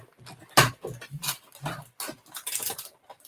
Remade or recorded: remade